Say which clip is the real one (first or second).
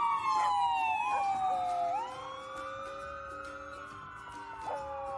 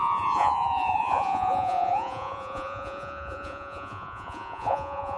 first